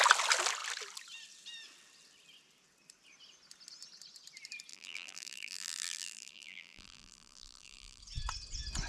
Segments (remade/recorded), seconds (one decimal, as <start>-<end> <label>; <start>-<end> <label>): 0.0-4.7 recorded; 4.7-8.0 remade; 8.0-8.9 recorded